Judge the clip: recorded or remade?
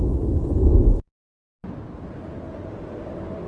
recorded